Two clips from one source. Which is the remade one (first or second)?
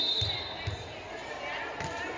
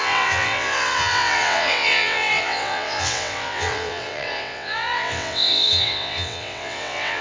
second